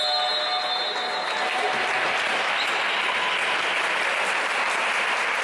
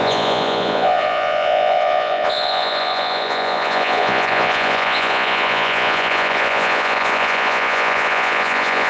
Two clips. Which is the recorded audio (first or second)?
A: first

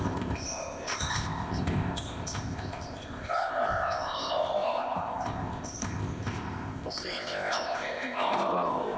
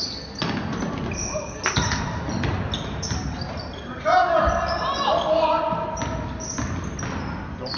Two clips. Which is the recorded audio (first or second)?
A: second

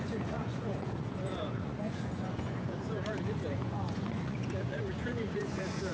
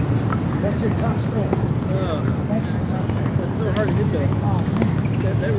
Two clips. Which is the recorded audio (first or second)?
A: second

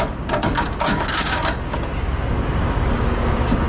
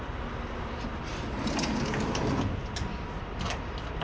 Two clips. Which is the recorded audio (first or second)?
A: second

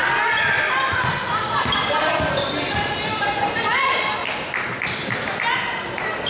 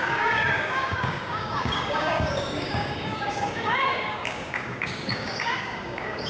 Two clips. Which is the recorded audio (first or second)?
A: first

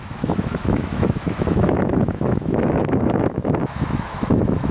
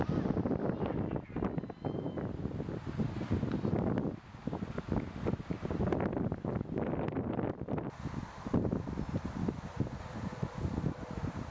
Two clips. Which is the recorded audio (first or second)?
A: second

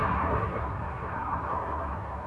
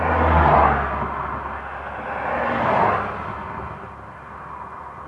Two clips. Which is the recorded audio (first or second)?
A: second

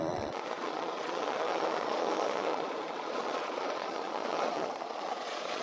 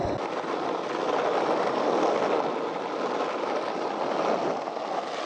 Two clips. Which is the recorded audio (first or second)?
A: second